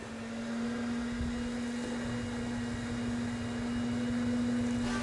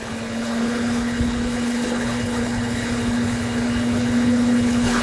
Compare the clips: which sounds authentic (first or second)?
first